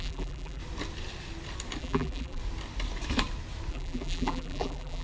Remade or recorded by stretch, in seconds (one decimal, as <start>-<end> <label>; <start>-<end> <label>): 0.0-0.6 remade; 0.6-1.8 recorded; 1.8-2.4 remade; 2.4-3.7 recorded; 3.7-5.0 remade